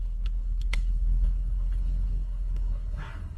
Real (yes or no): no